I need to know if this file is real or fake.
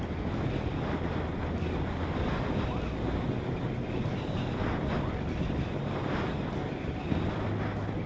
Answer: real